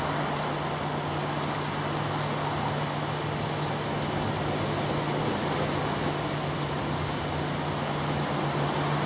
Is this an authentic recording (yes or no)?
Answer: yes